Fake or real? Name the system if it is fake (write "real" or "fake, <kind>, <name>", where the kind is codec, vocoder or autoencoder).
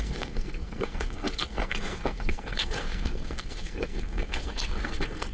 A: fake, codec, SNAC